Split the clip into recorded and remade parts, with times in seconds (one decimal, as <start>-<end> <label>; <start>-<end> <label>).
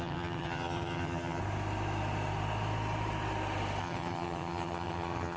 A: 0.0-1.4 remade; 1.4-3.8 recorded; 3.8-5.4 remade